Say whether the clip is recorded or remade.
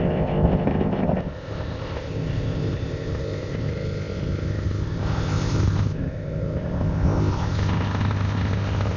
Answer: remade